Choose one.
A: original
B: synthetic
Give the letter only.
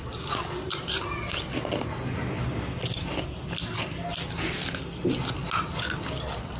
A